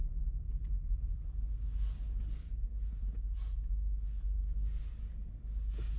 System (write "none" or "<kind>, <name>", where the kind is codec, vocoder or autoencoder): none